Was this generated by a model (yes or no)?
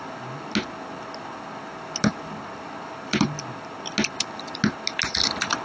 no